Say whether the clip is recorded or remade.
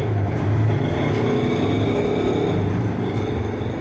recorded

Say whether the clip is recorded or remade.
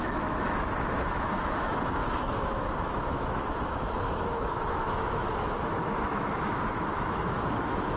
remade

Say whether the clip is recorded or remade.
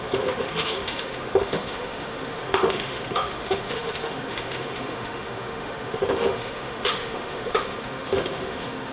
remade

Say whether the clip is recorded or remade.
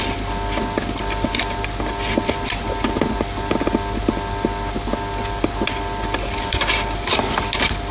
recorded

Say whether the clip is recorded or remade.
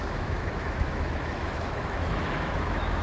remade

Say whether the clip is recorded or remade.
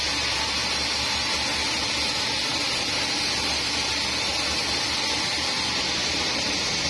recorded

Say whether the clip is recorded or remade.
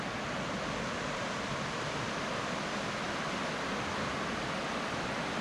recorded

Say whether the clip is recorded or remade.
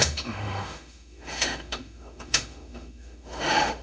remade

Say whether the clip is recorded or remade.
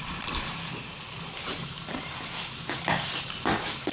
recorded